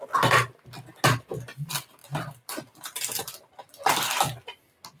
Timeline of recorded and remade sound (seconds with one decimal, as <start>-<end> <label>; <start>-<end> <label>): 0.0-2.0 recorded; 2.0-4.1 remade; 4.1-5.0 recorded